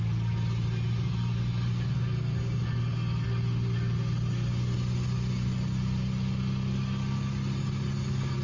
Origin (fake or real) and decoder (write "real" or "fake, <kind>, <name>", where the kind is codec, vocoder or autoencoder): real